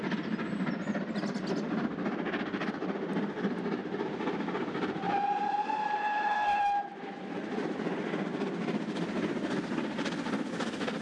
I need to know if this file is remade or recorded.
recorded